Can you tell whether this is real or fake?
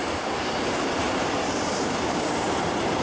fake